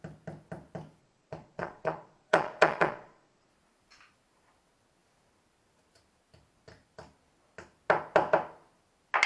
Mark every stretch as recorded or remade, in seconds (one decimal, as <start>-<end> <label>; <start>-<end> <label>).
0.0-1.0 recorded; 1.0-3.5 remade; 3.5-9.3 recorded